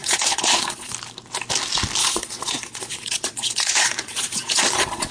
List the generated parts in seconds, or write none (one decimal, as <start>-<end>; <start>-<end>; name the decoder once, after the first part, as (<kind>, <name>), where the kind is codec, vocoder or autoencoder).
0.0-0.9 (vocoder, Vocos); 2.0-5.1